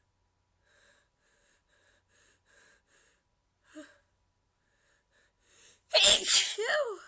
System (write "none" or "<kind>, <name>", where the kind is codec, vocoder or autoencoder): none